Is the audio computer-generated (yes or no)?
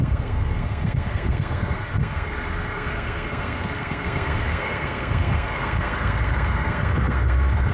yes